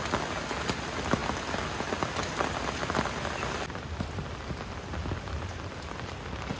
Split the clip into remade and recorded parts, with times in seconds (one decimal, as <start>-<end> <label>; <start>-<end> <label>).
0.0-6.6 recorded